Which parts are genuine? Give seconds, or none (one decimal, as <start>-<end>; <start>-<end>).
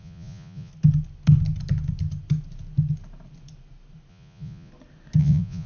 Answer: 0.7-4.1; 4.7-5.2